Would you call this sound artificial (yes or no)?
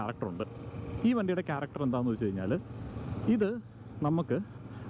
no